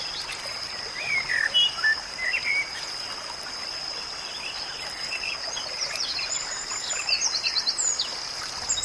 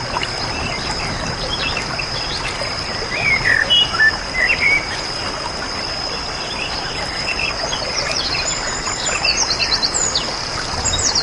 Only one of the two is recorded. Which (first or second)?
first